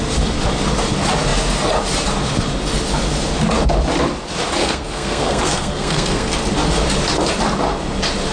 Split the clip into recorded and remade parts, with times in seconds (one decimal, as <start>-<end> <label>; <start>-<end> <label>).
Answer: 0.0-4.6 recorded; 4.6-6.3 remade; 6.3-8.3 recorded